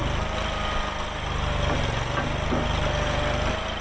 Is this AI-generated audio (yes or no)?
no